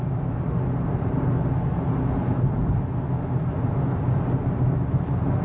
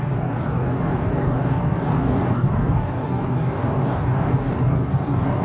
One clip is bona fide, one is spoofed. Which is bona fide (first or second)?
first